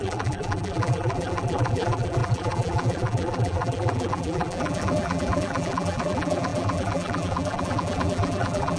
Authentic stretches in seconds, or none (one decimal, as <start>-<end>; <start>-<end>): none